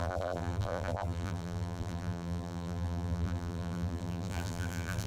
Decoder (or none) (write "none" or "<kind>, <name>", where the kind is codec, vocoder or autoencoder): vocoder, BigVGAN v2